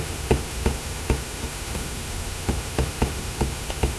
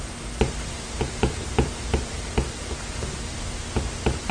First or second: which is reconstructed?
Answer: first